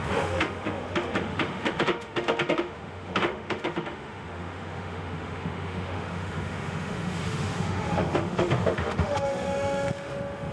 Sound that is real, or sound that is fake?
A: fake